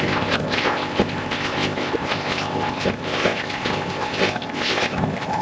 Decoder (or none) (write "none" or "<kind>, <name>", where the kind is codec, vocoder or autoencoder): codec, ZipCodec